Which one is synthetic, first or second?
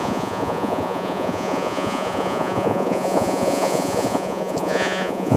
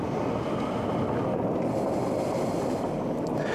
first